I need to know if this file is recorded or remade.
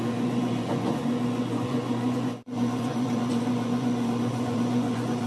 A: remade